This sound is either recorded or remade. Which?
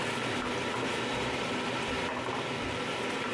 recorded